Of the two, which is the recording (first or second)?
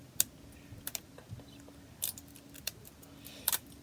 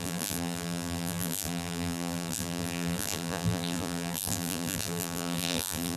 first